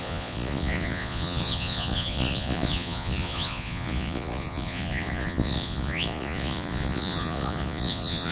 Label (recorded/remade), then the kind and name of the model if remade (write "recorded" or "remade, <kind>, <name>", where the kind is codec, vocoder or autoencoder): remade, vocoder, Vocos